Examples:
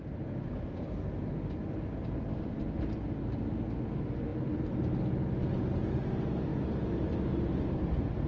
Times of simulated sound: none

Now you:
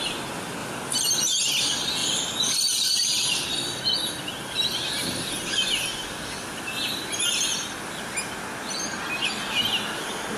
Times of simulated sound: 0.6-1.4; 2.0-3.8